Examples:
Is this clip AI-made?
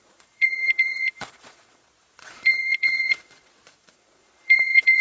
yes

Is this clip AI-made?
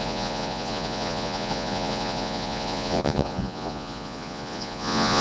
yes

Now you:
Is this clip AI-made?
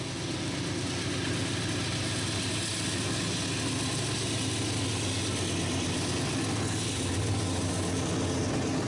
no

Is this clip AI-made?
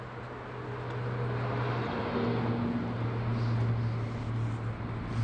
no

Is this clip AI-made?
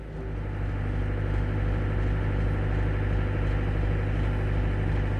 no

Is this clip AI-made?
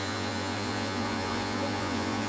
yes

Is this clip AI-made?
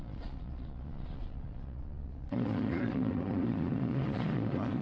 yes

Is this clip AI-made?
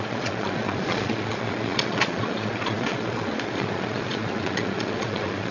yes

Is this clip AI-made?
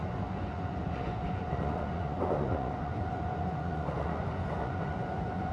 yes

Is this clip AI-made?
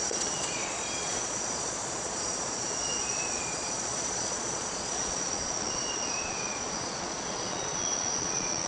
yes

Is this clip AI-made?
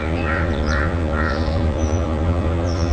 yes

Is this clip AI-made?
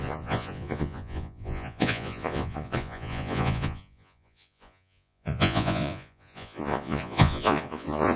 yes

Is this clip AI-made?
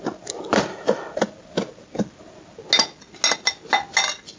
no